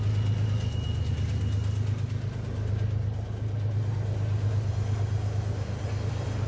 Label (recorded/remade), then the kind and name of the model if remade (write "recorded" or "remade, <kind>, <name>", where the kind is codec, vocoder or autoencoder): recorded